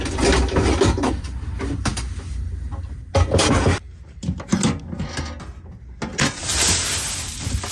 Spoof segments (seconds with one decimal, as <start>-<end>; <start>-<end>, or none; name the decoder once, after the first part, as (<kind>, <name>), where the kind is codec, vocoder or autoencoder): none